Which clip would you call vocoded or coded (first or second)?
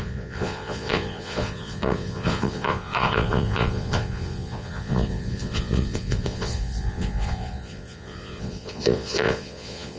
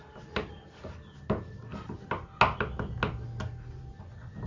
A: first